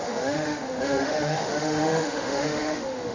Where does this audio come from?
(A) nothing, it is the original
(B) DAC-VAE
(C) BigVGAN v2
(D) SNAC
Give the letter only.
B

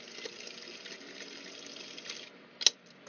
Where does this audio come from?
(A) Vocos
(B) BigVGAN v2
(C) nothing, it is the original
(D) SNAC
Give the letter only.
C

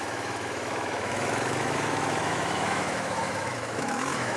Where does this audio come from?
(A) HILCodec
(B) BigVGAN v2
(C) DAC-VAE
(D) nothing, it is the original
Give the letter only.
C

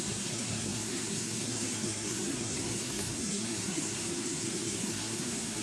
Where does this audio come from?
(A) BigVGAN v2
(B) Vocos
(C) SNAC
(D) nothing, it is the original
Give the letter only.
C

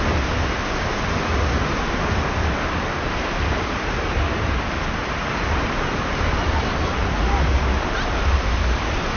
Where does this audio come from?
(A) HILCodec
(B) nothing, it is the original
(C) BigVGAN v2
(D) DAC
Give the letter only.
B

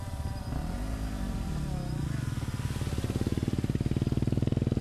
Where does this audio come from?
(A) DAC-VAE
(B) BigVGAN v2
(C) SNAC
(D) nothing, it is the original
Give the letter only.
D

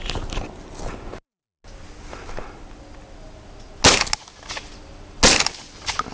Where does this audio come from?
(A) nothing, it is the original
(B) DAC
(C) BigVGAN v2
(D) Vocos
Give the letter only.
A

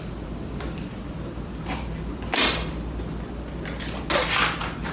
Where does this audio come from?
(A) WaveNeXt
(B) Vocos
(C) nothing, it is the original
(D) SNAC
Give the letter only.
C